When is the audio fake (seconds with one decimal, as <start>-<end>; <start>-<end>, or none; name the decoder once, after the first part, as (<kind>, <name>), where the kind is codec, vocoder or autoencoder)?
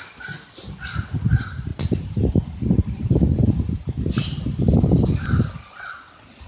1.7-4.1 (vocoder, BigVGAN v2)